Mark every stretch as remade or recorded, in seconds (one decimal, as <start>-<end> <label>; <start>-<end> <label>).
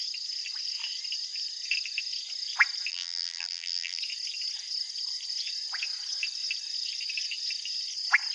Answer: 0.0-2.9 recorded; 2.9-4.0 remade; 4.0-8.3 recorded